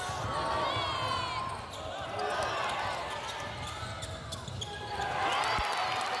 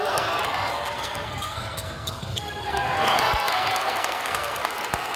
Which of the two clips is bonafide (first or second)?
first